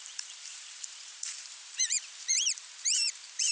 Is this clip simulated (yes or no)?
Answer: yes